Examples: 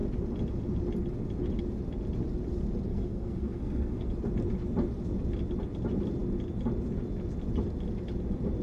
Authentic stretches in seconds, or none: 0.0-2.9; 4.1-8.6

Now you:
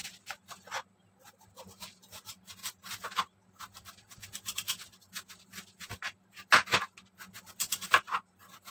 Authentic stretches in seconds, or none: 0.0-8.7

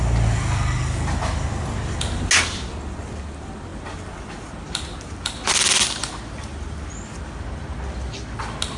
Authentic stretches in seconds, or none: 0.0-8.8

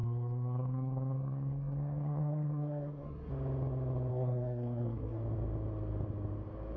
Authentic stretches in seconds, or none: 3.3-4.1; 5.2-6.8

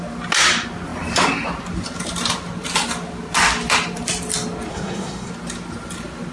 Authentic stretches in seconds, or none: 0.0-4.7; 5.3-6.3